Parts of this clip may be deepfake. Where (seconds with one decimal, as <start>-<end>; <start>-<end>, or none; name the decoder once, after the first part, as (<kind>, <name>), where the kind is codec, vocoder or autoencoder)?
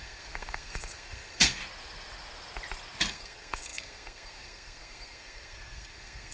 0.0-1.6 (codec, SNAC); 3.1-6.3